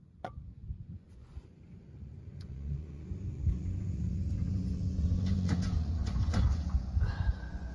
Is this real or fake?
fake